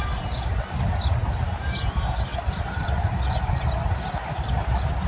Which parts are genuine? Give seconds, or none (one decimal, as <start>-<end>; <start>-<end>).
0.0-5.1